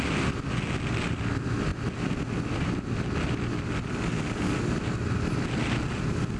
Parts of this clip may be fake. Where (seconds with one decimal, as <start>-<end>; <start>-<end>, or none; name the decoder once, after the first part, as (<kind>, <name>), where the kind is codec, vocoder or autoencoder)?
none

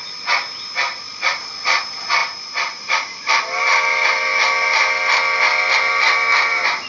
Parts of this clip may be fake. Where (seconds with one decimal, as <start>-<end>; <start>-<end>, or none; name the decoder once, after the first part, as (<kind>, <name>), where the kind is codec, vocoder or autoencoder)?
none